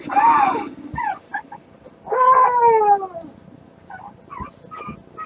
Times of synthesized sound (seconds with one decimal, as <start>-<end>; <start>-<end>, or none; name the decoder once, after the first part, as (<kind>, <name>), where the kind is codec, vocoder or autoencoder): none